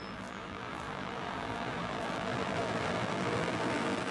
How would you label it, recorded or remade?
remade